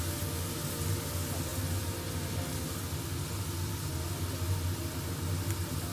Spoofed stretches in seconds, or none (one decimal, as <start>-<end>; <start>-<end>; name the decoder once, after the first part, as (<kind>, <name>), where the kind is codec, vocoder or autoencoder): none